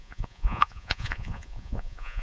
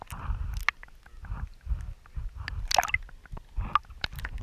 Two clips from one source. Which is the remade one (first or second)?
first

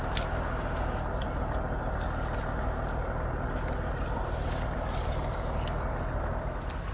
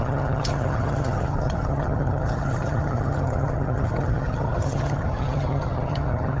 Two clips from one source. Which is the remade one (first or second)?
second